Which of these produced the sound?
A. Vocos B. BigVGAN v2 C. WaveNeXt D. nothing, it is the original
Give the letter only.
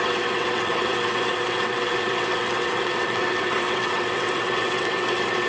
C